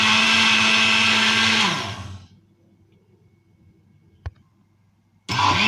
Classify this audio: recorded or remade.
recorded